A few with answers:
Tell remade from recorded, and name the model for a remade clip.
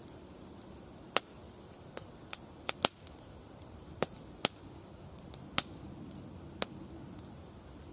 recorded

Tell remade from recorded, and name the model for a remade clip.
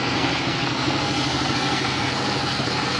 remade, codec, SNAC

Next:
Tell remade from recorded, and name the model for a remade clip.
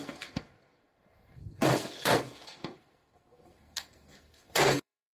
remade, codec, SNAC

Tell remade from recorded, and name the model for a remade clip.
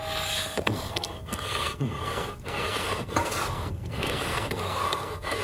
remade, codec, SNAC